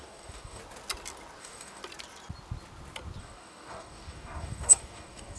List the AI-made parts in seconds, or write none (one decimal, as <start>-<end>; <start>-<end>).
0.0-0.6; 1.4-1.8; 3.2-5.4